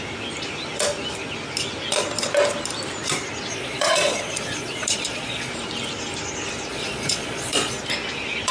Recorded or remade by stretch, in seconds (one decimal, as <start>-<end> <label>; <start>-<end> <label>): 0.0-3.5 recorded; 3.5-5.5 remade; 5.5-6.7 recorded; 6.7-7.8 remade; 7.8-8.5 recorded